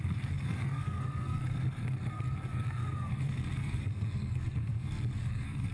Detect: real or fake fake